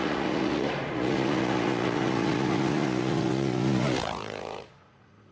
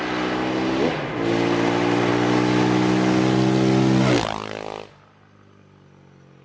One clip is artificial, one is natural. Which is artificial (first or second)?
first